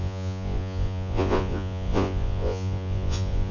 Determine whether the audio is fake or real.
fake